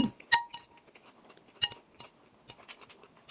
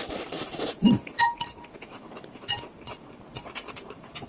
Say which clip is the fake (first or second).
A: second